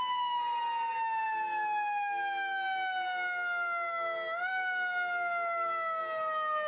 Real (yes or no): yes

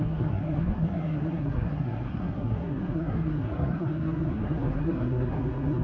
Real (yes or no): no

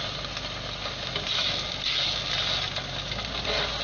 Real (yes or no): yes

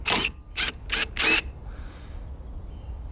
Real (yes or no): yes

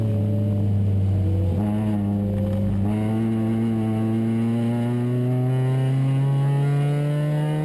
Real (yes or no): yes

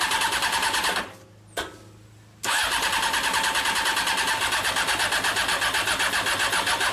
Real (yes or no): yes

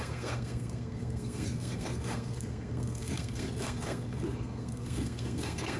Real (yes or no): no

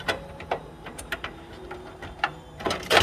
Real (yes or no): no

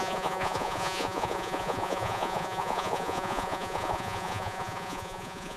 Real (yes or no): no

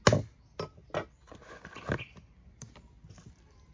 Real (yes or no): yes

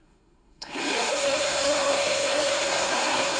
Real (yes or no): no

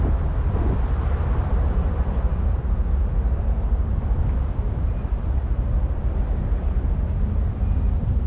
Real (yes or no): no